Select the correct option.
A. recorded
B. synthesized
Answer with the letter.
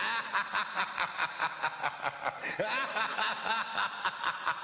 A